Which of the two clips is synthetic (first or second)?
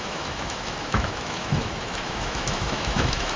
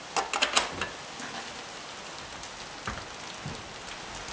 first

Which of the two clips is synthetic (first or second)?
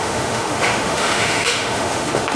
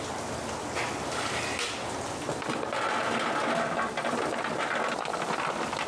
first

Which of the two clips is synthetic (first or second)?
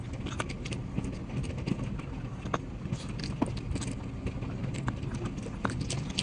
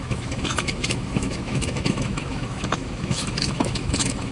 second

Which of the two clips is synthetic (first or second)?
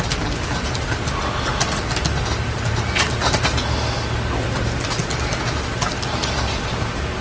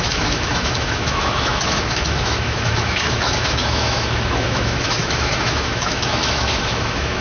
second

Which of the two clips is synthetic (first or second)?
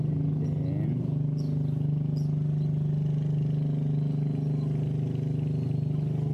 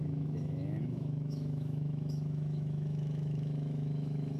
second